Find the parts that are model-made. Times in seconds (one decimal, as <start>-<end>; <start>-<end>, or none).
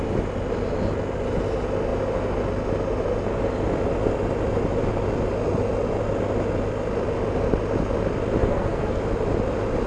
8.4-9.0